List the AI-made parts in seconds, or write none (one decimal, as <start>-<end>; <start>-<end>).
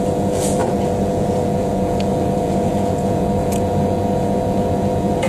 0.0-5.3